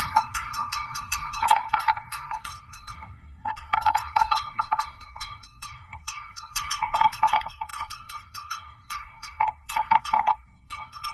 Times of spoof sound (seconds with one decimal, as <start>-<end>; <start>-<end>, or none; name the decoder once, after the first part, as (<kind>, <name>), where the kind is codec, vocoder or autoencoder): 0.0-11.1 (codec, SNAC)

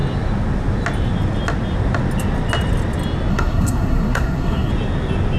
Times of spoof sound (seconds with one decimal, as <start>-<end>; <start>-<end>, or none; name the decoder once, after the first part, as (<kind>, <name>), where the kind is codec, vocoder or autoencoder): 3.3-4.7 (codec, SNAC)

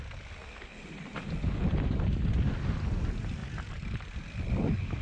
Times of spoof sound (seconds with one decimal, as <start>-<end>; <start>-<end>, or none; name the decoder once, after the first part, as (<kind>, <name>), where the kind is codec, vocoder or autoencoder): none

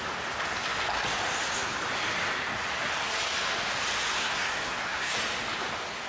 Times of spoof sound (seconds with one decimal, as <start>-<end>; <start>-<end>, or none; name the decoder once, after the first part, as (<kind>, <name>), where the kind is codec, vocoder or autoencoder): 4.2-5.1 (codec, SNAC)

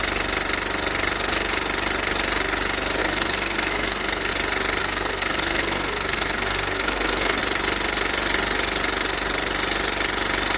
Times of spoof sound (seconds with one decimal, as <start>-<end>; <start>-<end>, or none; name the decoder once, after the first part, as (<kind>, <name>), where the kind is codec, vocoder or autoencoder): 3.0-4.3 (codec, SNAC); 4.8-7.4